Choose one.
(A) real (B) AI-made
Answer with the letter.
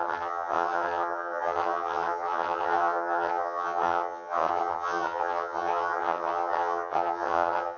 B